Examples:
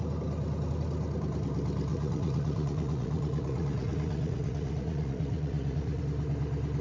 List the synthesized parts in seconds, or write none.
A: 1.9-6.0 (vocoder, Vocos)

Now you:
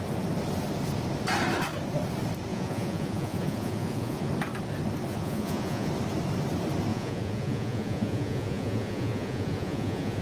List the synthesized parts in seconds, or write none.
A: 2.5-4.3 (vocoder, Vocos); 5.1-5.9; 6.9-10.2

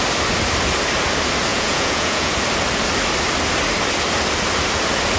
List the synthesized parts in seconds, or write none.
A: 1.5-2.3 (vocoder, Vocos)